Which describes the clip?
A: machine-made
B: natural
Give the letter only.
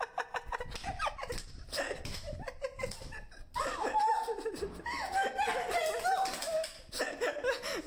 B